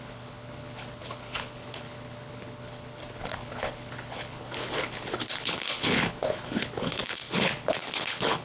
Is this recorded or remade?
remade